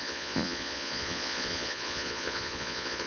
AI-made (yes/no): yes